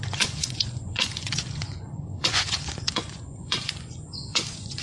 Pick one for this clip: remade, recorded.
remade